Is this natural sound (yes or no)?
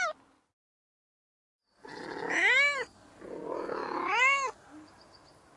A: yes